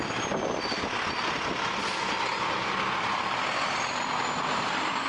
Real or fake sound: real